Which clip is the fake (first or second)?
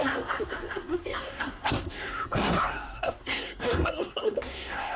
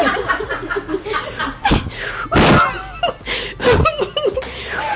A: first